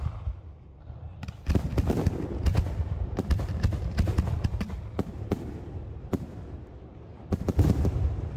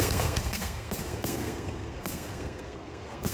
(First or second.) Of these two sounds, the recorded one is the first